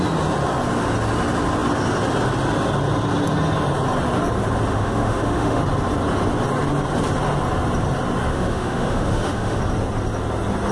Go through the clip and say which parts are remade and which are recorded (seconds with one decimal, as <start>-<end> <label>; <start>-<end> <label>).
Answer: 0.0-4.7 recorded; 4.7-5.6 remade; 5.6-8.3 recorded; 8.3-9.6 remade; 9.6-10.7 recorded

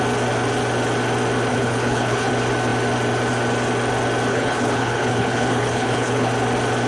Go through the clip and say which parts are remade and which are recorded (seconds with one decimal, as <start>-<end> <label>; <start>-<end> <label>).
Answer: 0.0-1.5 recorded; 1.5-2.3 remade; 2.3-4.3 recorded; 4.3-6.3 remade; 6.3-6.9 recorded

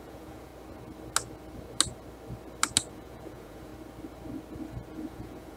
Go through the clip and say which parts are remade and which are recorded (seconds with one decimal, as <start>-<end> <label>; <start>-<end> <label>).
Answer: 0.0-0.5 remade; 0.5-2.9 recorded; 2.9-3.7 remade; 3.7-4.9 recorded; 4.9-5.6 remade

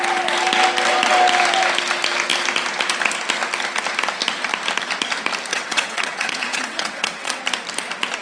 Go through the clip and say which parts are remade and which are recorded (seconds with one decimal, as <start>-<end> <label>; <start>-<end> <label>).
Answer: 0.0-5.5 recorded; 5.5-7.4 remade; 7.4-8.2 recorded

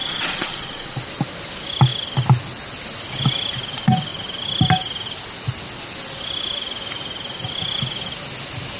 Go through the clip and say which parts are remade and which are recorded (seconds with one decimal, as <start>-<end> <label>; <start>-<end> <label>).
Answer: 0.0-1.0 remade; 1.0-8.8 recorded

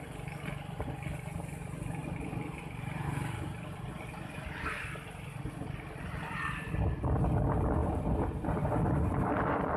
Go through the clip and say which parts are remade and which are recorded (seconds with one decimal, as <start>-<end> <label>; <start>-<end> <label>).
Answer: 0.0-2.0 recorded; 2.0-3.9 remade; 3.9-7.8 recorded; 7.8-8.4 remade; 8.4-9.8 recorded